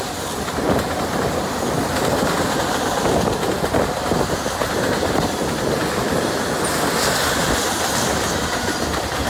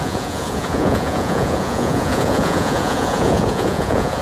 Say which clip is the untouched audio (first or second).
first